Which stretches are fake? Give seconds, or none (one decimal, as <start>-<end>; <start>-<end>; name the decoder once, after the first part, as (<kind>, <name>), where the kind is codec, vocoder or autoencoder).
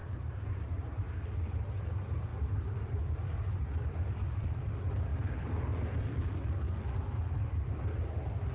0.0-1.2 (vocoder, BigVGAN v2)